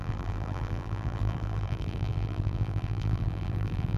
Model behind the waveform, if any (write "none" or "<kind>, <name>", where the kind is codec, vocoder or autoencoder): vocoder, BigVGAN v2